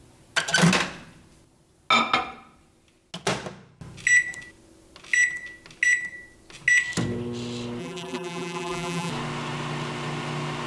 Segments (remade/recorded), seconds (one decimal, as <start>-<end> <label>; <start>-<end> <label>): 0.0-7.8 recorded; 7.8-9.1 remade; 9.1-10.7 recorded